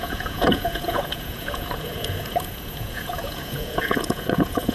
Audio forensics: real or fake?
fake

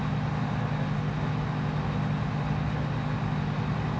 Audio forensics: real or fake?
real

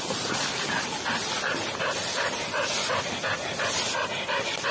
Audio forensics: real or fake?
real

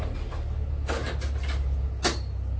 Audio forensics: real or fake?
real